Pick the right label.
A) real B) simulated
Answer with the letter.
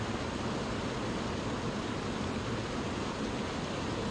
A